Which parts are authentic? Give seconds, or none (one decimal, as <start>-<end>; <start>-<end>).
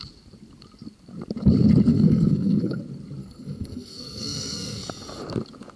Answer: 0.0-1.9; 2.8-3.2; 4.9-5.8